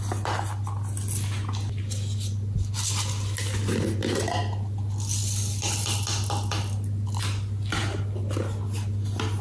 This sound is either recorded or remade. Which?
recorded